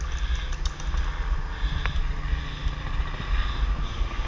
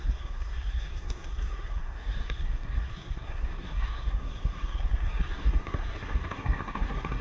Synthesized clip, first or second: second